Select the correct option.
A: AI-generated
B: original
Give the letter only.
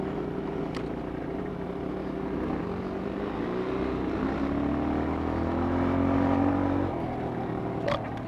B